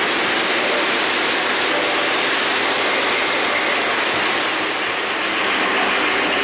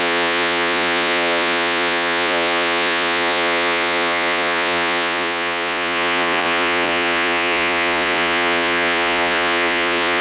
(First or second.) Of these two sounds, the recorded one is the first